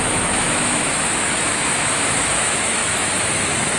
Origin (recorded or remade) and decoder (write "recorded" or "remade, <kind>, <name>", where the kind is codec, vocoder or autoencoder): remade, autoencoder, DAC-VAE